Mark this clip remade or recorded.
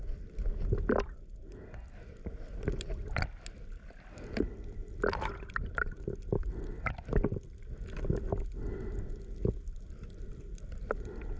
recorded